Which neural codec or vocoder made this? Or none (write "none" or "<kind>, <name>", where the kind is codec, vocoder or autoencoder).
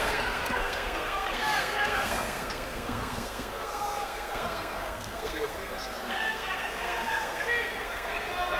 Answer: codec, SNAC